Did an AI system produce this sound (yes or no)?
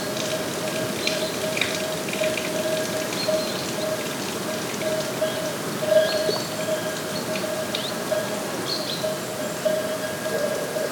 no